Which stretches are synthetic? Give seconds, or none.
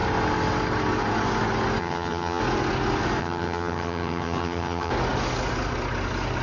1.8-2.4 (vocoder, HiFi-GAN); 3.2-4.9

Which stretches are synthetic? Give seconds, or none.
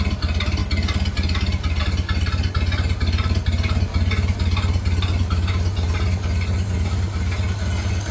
none